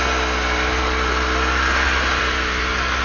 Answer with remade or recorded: recorded